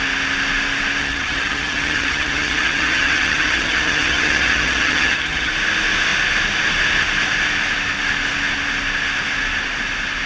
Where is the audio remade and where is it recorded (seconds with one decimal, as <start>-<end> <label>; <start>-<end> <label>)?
0.0-1.0 recorded; 1.0-5.5 remade; 5.5-10.3 recorded